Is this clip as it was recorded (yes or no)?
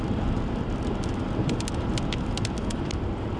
yes